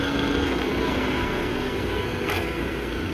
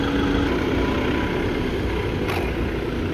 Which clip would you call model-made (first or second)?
first